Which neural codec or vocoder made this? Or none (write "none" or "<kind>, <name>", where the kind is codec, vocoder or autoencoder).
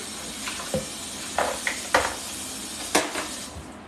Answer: none